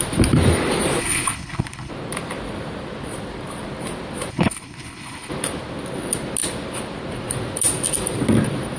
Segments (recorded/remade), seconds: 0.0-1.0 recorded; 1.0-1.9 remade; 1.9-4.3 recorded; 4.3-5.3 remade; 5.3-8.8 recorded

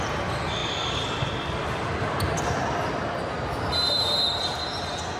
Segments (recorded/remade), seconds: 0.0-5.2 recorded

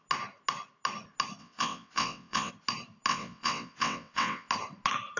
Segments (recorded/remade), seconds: 0.0-1.4 recorded; 1.4-2.5 remade; 2.5-3.1 recorded; 3.1-4.5 remade; 4.5-5.2 recorded

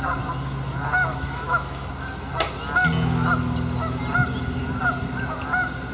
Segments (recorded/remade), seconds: 0.0-1.1 recorded; 1.1-1.9 remade; 1.9-5.9 recorded

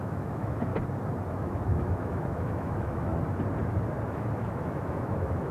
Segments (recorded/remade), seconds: 0.0-0.7 remade; 0.7-1.3 recorded; 1.3-3.1 remade; 3.1-4.1 recorded; 4.1-5.5 remade

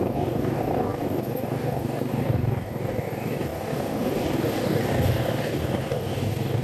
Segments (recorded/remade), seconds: 0.0-6.6 remade

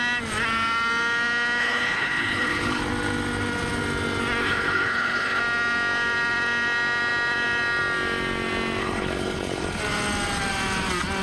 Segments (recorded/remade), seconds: 0.0-1.6 recorded; 1.6-2.8 remade; 2.8-4.4 recorded; 4.4-5.4 remade; 5.4-8.8 recorded; 8.8-9.8 remade; 9.8-11.2 recorded